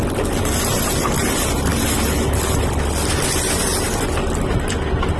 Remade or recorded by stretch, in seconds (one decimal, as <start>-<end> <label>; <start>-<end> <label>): 0.0-5.2 recorded